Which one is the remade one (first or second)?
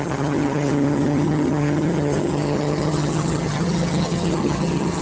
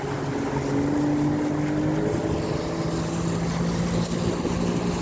first